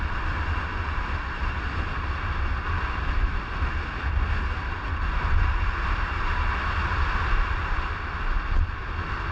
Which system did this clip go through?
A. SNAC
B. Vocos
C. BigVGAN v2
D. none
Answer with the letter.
D